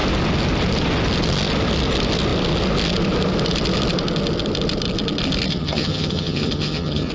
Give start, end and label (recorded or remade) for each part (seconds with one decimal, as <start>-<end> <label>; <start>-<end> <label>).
0.0-5.5 recorded; 5.5-7.1 remade

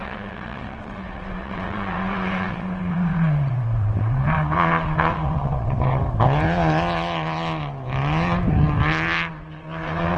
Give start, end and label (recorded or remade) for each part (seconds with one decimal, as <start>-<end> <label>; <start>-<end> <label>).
0.0-6.0 remade; 6.0-9.3 recorded; 9.3-10.2 remade

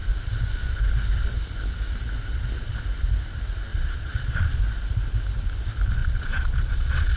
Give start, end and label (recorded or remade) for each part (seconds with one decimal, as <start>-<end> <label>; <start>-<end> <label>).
0.0-3.7 recorded; 3.7-4.5 remade; 4.5-6.0 recorded; 6.0-7.2 remade

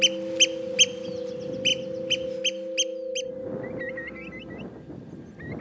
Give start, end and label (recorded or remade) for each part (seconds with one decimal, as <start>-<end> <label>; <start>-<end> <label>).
0.0-5.6 recorded

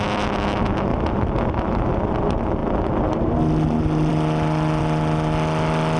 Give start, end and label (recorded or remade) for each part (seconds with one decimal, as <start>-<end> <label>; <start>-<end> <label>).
0.0-6.0 recorded

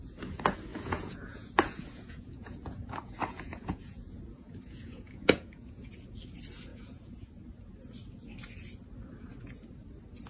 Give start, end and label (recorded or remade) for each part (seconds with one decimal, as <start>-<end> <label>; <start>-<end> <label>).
0.0-0.7 recorded; 0.7-5.9 remade; 5.9-6.7 recorded; 6.7-7.3 remade; 7.3-10.3 recorded

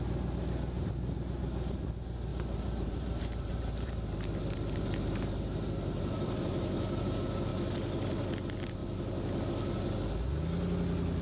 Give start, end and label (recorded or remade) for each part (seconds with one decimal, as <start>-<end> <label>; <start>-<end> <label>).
0.0-2.3 recorded; 2.3-7.1 remade; 7.1-11.2 recorded

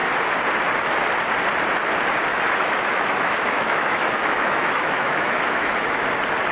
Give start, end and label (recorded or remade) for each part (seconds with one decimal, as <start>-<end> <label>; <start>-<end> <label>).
0.0-2.3 recorded; 2.3-6.0 remade; 6.0-6.5 recorded